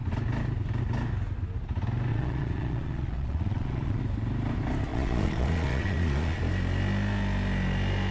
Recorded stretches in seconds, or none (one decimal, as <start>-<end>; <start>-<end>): 0.0-2.1; 4.0-4.9; 6.4-8.1

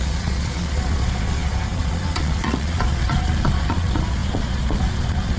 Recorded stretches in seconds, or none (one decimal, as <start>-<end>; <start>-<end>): none

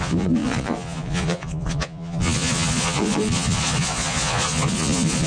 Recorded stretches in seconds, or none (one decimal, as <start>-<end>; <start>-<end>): none

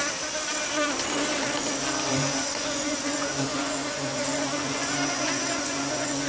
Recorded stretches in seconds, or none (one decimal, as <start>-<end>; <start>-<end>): 0.0-2.1